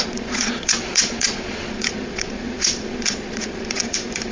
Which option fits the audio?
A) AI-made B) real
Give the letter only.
A